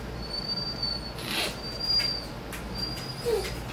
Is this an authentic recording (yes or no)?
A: yes